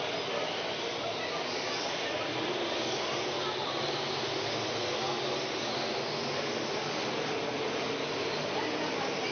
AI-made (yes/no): no